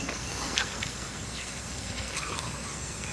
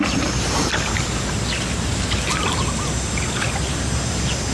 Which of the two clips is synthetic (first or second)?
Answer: first